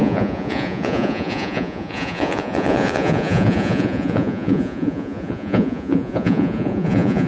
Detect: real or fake fake